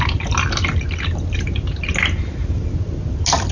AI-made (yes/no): no